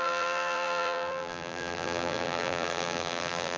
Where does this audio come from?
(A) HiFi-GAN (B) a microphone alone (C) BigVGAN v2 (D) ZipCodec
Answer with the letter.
C